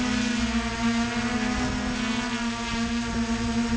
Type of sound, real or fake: real